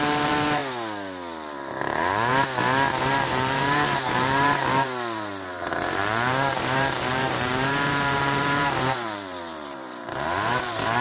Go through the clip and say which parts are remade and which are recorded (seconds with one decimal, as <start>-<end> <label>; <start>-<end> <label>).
0.0-0.6 remade; 0.6-1.7 recorded; 1.7-2.3 remade; 2.3-3.0 recorded; 3.0-11.0 remade